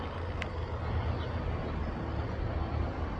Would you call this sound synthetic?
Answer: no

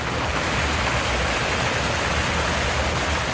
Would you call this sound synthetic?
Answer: no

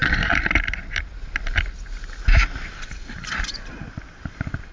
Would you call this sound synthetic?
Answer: no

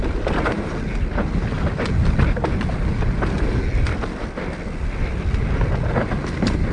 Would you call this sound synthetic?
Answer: no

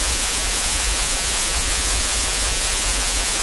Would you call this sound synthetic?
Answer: yes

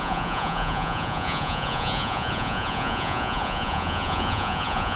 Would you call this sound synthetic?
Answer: yes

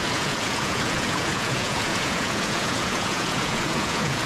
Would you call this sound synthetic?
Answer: yes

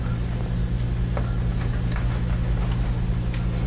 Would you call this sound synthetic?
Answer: no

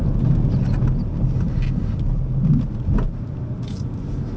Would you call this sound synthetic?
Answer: no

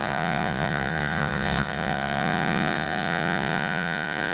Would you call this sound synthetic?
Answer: yes